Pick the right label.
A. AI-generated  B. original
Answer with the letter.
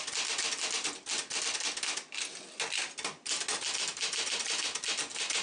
B